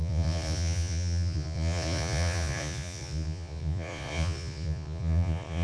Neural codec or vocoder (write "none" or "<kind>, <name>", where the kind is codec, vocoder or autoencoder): vocoder, Vocos